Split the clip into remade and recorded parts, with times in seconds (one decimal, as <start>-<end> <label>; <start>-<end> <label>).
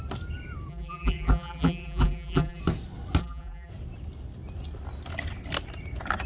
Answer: 0.0-0.7 recorded; 0.7-2.6 remade; 2.6-3.2 recorded; 3.2-3.7 remade; 3.7-6.3 recorded